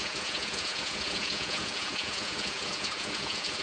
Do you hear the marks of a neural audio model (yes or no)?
yes